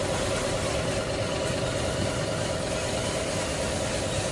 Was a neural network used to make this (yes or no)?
no